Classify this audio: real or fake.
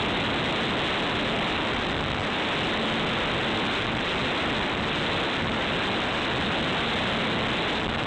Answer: real